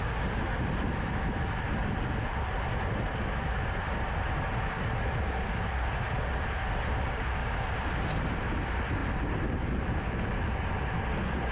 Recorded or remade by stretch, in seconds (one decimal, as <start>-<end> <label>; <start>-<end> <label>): 0.0-11.5 recorded